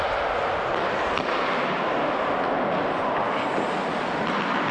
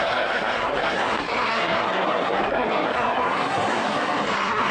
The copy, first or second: second